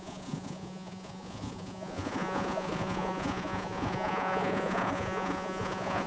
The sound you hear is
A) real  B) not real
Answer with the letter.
B